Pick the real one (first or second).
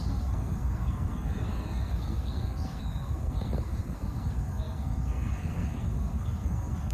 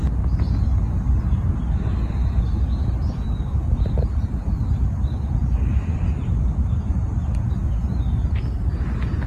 second